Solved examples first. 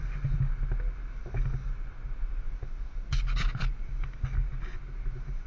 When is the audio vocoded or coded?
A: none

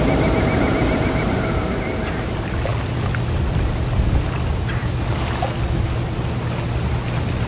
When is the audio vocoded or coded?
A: none